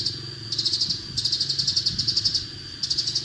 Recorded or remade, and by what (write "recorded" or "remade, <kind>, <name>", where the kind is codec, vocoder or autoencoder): recorded